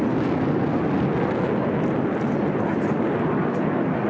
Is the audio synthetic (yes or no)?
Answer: no